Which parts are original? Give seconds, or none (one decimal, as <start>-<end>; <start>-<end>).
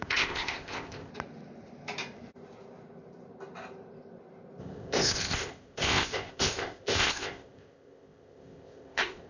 1.1-4.6